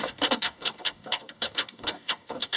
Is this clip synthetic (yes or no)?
yes